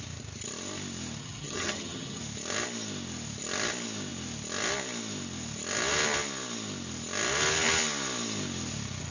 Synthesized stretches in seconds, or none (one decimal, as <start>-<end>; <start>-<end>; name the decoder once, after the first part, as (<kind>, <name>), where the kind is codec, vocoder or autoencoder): 1.2-2.2 (vocoder, HiFi-GAN)